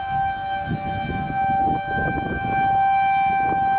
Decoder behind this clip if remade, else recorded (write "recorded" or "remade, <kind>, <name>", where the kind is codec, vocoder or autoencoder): recorded